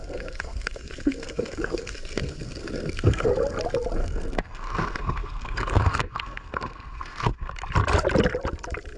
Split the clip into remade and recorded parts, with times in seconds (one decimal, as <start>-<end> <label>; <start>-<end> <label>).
0.0-3.3 remade; 3.3-4.0 recorded; 4.0-7.5 remade; 7.5-9.0 recorded